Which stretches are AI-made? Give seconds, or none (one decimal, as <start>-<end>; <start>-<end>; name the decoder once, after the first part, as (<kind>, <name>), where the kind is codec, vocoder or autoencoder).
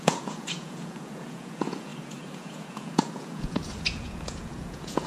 0.0-5.1 (vocoder, Vocos)